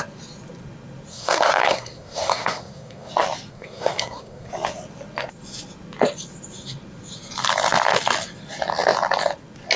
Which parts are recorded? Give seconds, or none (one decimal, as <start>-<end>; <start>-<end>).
0.0-1.1; 3.1-3.5; 4.5-9.8